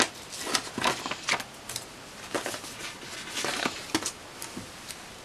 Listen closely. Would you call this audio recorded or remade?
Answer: recorded